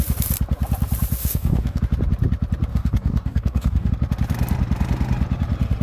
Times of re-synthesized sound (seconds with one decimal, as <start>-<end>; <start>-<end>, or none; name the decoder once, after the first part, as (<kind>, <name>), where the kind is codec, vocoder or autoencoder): 1.2-1.8 (codec, DAC); 2.7-3.9